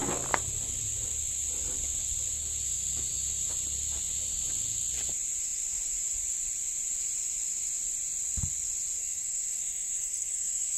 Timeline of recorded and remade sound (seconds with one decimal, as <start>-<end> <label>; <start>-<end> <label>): 0.0-9.0 recorded; 9.0-10.8 remade